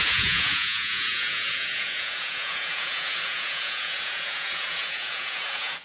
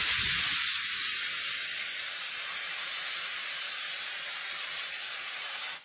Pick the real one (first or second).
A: second